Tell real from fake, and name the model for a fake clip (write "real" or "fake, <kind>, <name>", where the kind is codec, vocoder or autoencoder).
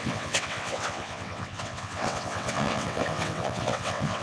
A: fake, vocoder, WaveNeXt